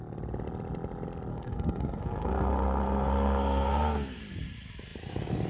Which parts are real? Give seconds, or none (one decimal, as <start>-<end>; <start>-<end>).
0.0-1.3; 4.2-5.5